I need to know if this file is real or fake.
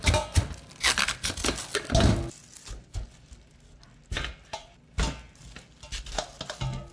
real